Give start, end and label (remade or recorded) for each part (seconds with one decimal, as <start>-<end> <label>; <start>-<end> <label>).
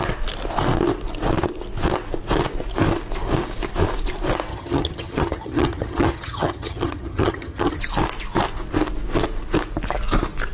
0.0-4.5 recorded; 4.5-7.8 remade; 7.8-10.5 recorded